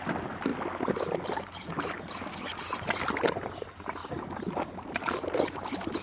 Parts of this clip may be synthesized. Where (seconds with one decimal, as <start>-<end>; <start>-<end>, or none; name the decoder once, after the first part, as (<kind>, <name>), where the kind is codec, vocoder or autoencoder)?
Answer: 0.0-0.5 (vocoder, BigVGAN v2); 3.1-4.0; 4.5-6.0